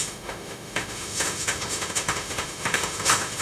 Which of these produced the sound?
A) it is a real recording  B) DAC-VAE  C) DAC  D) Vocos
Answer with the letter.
B